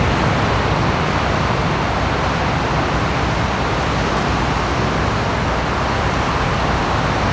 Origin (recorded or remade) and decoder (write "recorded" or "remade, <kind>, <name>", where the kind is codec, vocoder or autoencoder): recorded